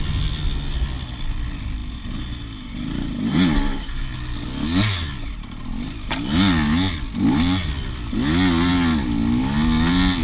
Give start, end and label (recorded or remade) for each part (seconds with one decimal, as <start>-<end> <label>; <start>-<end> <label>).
0.0-1.8 recorded; 1.8-4.0 remade; 4.0-10.2 recorded